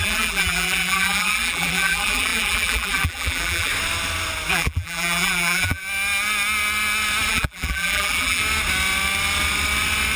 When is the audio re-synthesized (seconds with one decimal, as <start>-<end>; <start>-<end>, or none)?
0.0-3.7; 4.5-5.8; 7.3-8.4

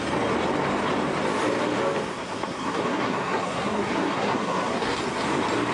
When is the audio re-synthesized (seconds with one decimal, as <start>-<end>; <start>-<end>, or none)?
2.1-5.0